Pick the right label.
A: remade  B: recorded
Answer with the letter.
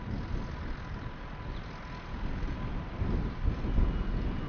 B